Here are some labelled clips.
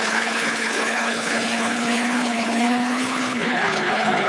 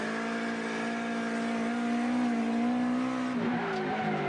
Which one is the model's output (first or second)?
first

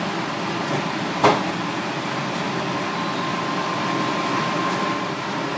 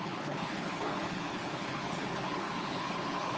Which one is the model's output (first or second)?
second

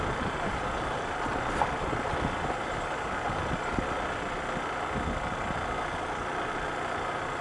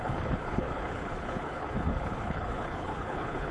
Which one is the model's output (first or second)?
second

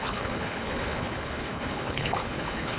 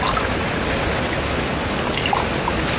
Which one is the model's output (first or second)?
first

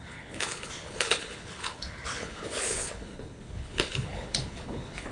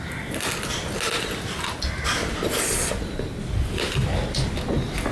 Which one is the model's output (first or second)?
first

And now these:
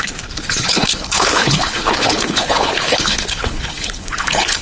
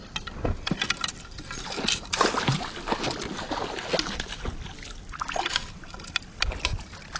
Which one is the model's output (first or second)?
first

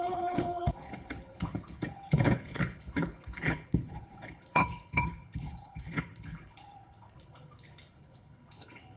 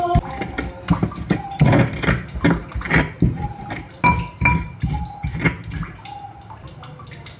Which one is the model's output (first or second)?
first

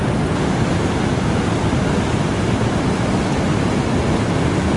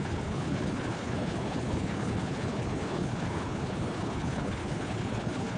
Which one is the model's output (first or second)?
second